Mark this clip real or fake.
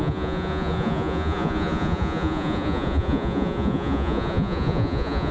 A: fake